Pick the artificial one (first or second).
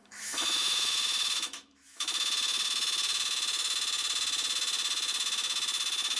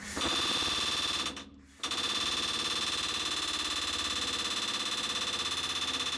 first